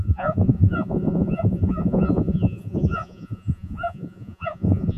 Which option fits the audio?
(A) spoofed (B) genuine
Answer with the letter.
A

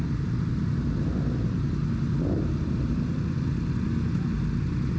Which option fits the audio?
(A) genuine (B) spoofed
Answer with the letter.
A